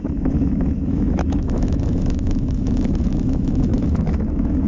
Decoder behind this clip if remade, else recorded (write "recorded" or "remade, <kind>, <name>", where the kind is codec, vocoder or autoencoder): remade, autoencoder, DAC-VAE